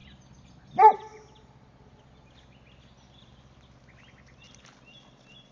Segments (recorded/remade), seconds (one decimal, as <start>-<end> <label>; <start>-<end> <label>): 0.0-5.5 recorded